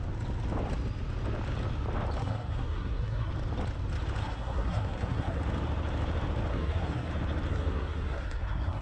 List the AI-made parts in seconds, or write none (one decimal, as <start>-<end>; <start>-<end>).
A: 2.2-3.3; 4.2-5.4; 6.5-7.1; 7.5-8.8